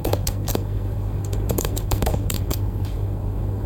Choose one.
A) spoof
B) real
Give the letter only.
A